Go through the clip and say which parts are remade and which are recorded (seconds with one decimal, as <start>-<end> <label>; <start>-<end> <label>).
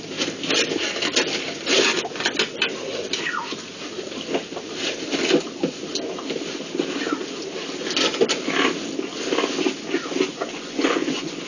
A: 0.0-10.5 recorded; 10.5-11.5 remade